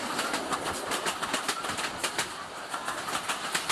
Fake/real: real